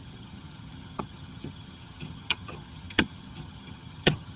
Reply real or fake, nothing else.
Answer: fake